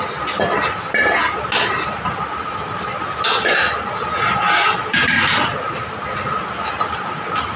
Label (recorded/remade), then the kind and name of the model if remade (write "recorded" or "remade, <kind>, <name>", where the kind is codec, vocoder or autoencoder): recorded